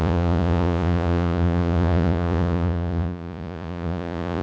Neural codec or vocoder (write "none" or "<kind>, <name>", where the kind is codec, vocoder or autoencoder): vocoder, Vocos